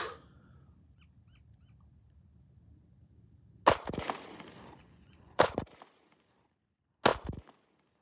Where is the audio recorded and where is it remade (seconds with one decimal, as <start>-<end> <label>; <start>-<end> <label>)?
0.0-4.8 recorded; 4.8-5.6 remade; 5.6-8.0 recorded

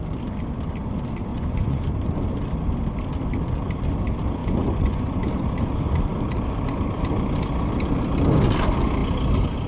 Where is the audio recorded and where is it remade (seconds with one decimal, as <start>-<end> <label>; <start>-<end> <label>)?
0.0-1.3 recorded; 1.3-1.9 remade; 1.9-4.4 recorded; 4.4-5.3 remade; 5.3-9.7 recorded

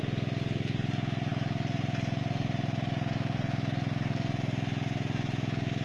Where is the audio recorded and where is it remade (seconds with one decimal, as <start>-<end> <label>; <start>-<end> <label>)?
0.0-5.8 recorded

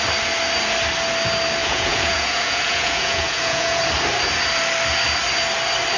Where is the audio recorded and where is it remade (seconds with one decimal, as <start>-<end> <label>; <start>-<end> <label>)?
0.0-1.6 recorded; 1.6-3.8 remade; 3.8-6.0 recorded

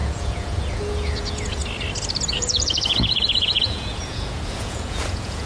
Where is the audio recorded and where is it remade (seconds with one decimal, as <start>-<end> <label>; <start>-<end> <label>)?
0.0-1.6 remade; 1.6-2.3 recorded; 2.3-5.5 remade

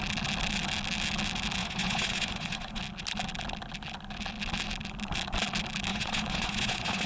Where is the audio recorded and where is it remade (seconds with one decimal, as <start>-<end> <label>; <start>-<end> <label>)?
0.0-1.6 recorded; 1.6-2.8 remade; 2.8-5.9 recorded; 5.9-7.1 remade

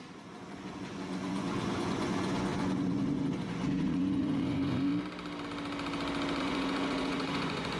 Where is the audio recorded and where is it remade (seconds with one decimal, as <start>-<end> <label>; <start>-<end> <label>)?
0.0-4.9 remade; 4.9-6.4 recorded; 6.4-7.8 remade